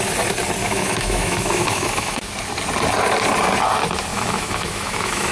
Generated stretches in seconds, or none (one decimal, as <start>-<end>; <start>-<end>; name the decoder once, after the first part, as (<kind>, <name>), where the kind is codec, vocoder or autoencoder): 0.6-2.3 (autoencoder, DAC-VAE); 4.1-5.3